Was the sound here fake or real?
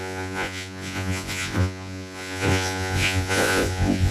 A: fake